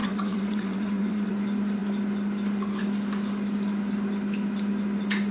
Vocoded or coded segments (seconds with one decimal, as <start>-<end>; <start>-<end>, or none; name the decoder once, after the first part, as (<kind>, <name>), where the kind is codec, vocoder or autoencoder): 0.0-1.3 (vocoder, WaveNeXt)